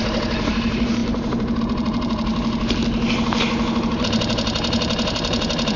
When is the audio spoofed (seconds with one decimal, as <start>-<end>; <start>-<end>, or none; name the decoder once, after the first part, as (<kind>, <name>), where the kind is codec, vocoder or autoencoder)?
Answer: 0.0-2.3 (vocoder, BigVGAN v2); 3.8-5.8